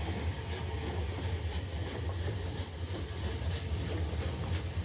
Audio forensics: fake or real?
real